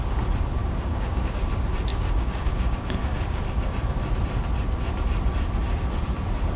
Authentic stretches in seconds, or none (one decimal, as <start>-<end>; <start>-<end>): 0.0-0.6; 1.5-1.9; 3.4-6.6